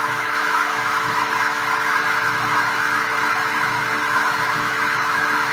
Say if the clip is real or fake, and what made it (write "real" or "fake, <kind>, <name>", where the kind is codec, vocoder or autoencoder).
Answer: fake, autoencoder, DAC-VAE